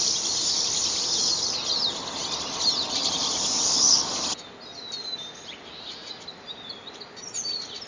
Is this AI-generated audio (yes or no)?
no